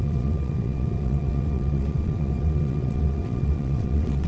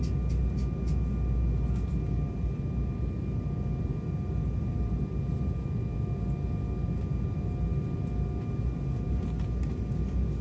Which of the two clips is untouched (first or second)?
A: second